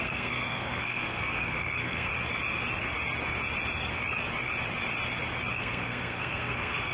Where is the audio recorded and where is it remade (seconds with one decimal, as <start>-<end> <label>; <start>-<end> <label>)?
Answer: 0.0-2.1 remade; 2.1-5.6 recorded; 5.6-6.9 remade